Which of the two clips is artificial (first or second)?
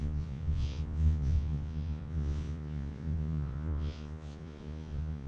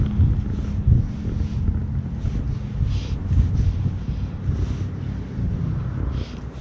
first